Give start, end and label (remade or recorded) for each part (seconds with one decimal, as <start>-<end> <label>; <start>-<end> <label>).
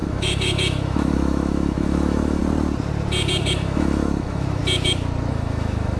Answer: 0.0-2.4 remade; 2.4-3.4 recorded; 3.4-4.6 remade; 4.6-5.3 recorded; 5.3-6.0 remade